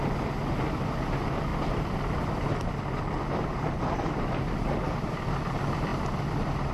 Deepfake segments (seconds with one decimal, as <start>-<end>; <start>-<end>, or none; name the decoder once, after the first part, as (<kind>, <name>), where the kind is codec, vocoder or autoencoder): 1.5-5.1 (vocoder, BigVGAN v2); 5.9-6.7